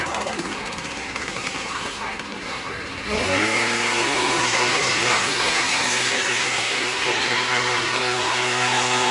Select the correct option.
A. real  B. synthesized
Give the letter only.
B